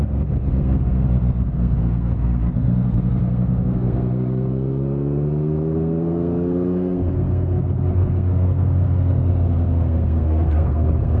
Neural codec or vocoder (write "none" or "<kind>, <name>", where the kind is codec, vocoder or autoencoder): codec, SNAC